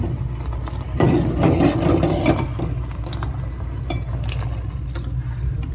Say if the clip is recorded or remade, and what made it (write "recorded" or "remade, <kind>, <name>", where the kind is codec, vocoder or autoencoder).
recorded